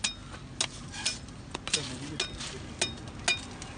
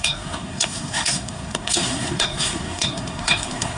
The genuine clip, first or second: first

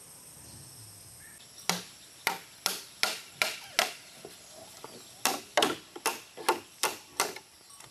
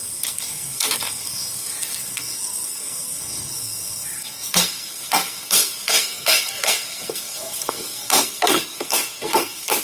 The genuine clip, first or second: first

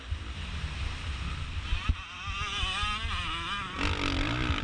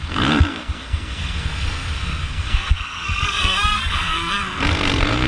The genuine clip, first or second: first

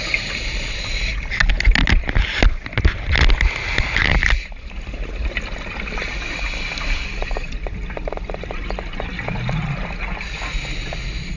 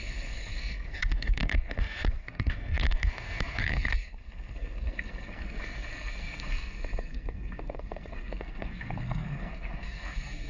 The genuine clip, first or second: first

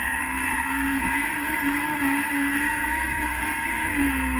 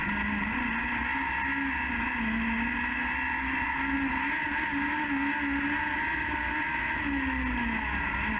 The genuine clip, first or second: second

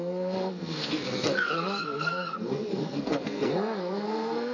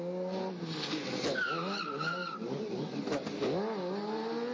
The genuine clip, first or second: second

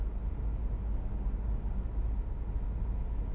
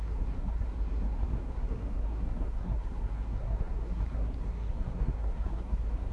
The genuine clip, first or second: first